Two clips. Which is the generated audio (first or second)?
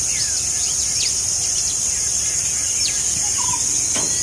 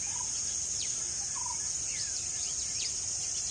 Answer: second